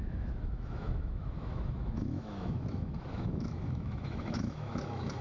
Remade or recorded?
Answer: remade